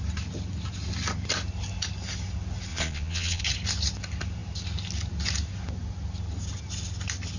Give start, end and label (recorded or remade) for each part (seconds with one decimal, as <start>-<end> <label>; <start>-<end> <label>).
0.0-2.7 recorded; 2.7-3.4 remade; 3.4-7.4 recorded